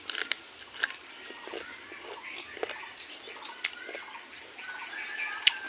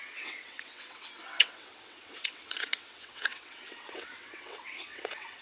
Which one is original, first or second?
first